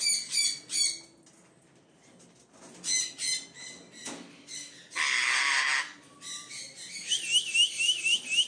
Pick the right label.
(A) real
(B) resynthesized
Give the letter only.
A